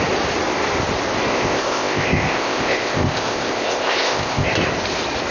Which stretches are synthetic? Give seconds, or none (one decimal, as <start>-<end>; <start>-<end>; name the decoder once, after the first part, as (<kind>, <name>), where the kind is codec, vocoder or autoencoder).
1.3-4.5 (codec, ZipCodec)